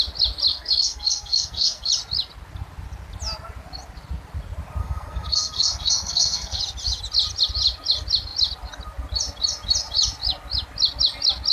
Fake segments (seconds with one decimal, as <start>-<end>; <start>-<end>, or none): 0.5-1.9; 4.8-6.6